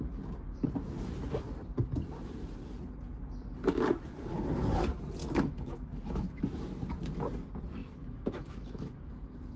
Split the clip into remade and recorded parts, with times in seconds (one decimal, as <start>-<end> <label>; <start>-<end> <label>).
0.0-5.2 recorded; 5.2-6.4 remade; 6.4-7.8 recorded; 7.8-9.1 remade; 9.1-9.6 recorded